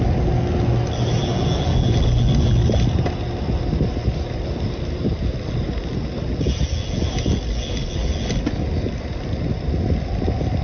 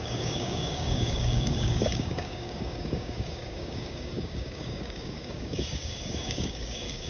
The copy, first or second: second